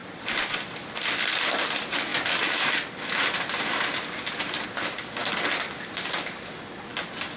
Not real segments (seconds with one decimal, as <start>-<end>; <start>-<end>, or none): 0.0-0.8